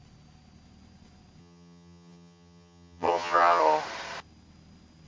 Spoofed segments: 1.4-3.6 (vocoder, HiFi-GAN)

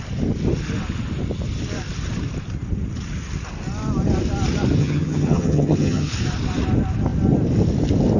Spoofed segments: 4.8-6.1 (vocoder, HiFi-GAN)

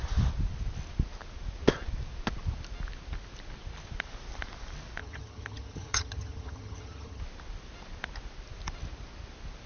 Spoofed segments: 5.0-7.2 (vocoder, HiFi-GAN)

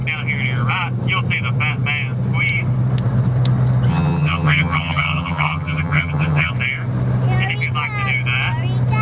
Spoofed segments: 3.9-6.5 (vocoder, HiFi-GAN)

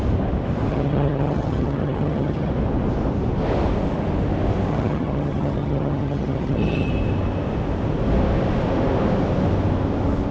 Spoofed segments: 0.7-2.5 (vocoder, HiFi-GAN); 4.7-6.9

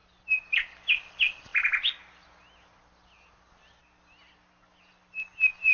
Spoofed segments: none

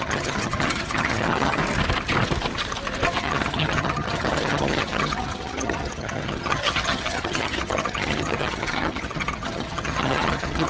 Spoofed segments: 0.0-1.6 (vocoder, HiFi-GAN); 3.2-10.7

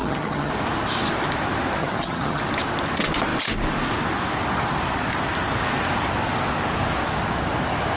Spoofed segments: 0.0-0.5 (vocoder, HiFi-GAN); 1.8-2.4